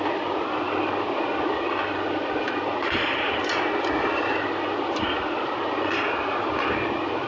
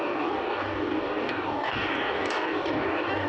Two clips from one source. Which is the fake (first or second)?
second